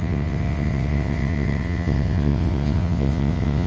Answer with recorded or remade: remade